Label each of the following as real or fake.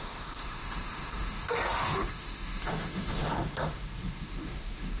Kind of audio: fake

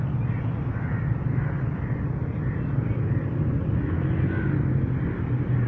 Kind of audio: real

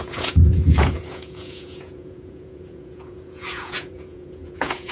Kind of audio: fake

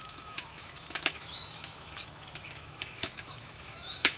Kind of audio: fake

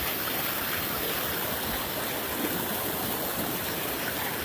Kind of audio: fake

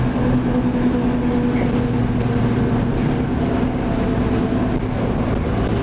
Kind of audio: real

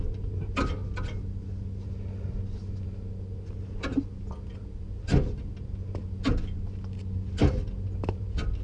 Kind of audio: real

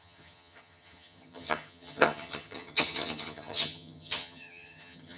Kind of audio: fake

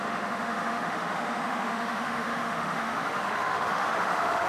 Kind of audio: fake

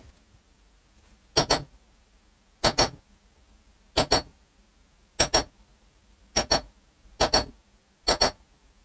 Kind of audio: real